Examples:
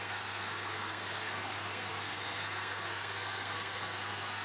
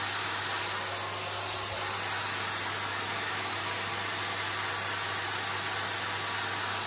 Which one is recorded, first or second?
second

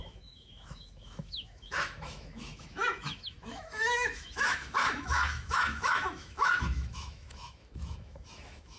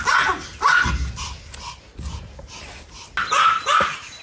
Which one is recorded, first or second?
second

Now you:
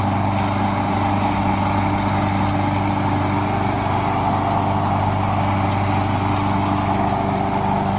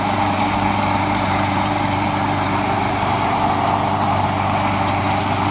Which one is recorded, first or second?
first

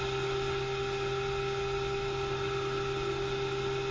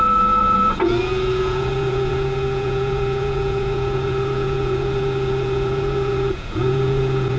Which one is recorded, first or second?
first